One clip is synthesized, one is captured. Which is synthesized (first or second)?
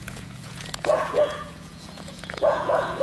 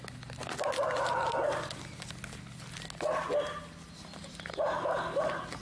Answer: first